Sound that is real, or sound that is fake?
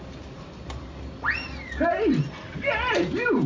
real